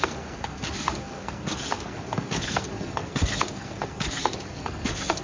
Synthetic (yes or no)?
yes